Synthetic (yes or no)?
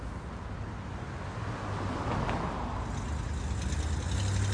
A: no